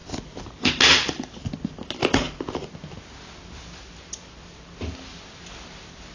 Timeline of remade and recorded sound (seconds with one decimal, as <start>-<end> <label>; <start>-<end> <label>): 0.0-6.1 recorded